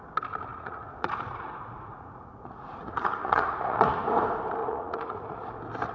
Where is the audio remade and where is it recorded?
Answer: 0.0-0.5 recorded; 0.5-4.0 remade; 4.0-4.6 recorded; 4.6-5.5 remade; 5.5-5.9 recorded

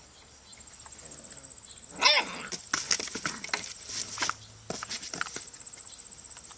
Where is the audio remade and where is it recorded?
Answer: 0.0-6.6 recorded

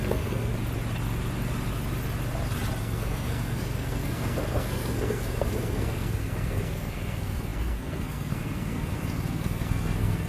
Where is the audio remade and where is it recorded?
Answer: 0.0-0.5 remade; 0.5-2.8 recorded; 2.8-10.3 remade